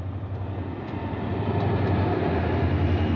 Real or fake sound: real